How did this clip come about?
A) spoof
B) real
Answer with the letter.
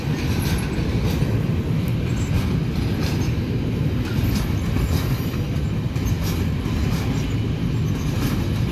B